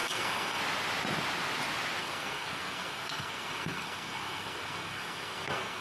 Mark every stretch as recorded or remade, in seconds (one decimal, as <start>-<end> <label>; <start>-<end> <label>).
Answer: 0.0-0.6 remade; 0.6-2.0 recorded; 2.0-5.8 remade